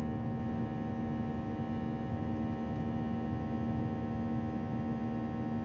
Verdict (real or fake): real